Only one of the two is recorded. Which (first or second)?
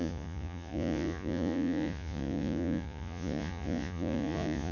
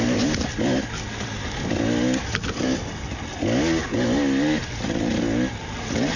second